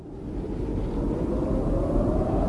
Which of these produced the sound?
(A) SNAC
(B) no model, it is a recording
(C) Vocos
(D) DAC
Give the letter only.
B